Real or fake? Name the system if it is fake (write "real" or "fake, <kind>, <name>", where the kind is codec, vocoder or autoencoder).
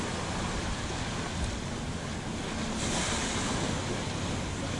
real